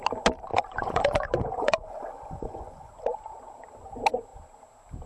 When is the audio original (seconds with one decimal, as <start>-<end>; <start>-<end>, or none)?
0.0-0.5; 2.9-5.1